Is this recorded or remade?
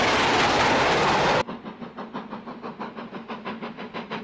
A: recorded